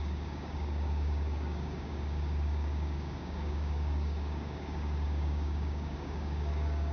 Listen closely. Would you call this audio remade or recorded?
remade